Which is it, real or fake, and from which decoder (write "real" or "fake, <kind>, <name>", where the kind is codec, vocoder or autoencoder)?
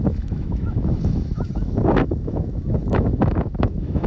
fake, autoencoder, DAC-VAE